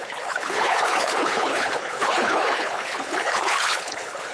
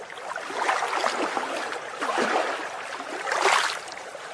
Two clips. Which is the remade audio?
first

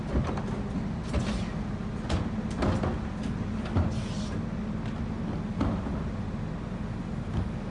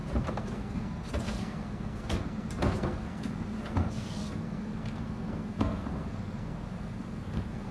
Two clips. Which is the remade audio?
second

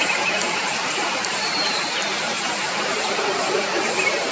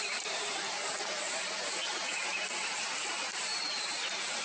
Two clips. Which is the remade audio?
first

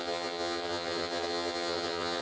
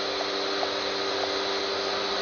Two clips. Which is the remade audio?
first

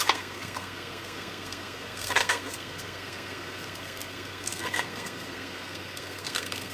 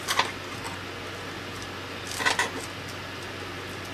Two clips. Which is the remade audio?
first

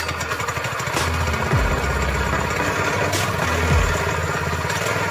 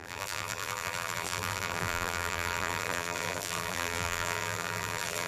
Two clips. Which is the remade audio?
second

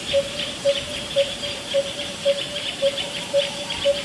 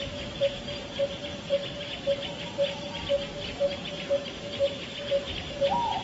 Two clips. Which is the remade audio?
first